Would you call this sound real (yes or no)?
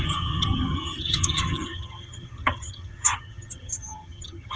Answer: no